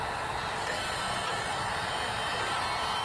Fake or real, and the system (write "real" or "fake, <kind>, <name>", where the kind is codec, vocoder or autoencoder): real